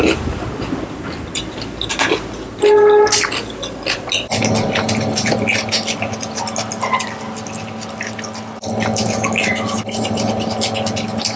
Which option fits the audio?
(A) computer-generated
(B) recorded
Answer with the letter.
B